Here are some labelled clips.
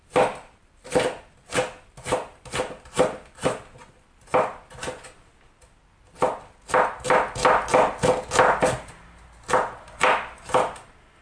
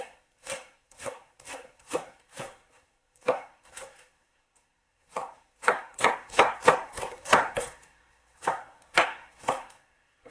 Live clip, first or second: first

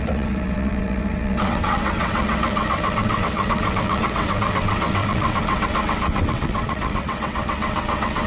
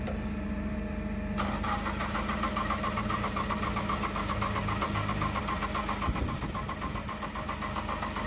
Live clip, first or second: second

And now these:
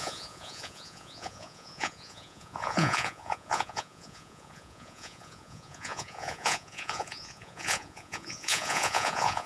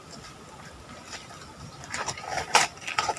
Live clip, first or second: second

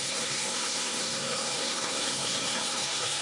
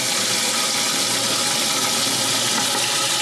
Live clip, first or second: second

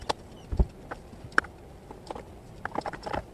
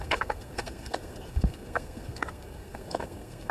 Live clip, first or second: first